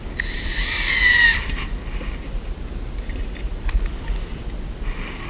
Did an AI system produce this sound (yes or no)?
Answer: no